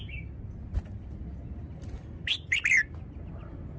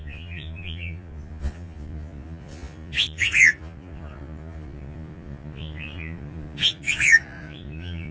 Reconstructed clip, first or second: second